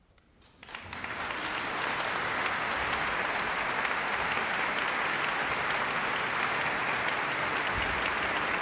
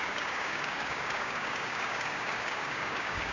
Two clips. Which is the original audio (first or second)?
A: first